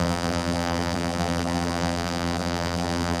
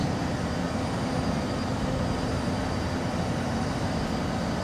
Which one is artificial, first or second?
first